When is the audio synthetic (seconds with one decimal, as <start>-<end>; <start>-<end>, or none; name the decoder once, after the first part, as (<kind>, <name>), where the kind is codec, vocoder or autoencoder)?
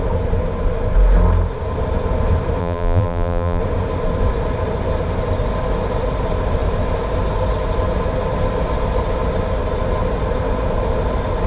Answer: 2.6-3.6 (vocoder, BigVGAN v2)